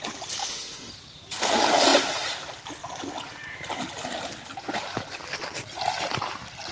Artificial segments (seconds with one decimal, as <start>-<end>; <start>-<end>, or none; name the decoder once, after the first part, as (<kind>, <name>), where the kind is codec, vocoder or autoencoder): 0.4-0.9 (autoencoder, DAC-VAE)